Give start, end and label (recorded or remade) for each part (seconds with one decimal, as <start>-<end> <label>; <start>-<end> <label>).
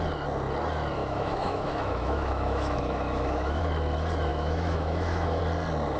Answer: 0.0-1.0 recorded; 1.0-3.6 remade; 3.6-4.3 recorded; 4.3-5.4 remade; 5.4-6.0 recorded